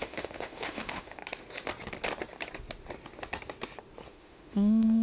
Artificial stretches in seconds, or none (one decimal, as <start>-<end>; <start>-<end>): 0.0-1.2; 4.1-5.0